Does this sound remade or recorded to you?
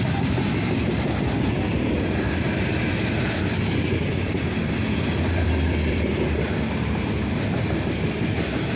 remade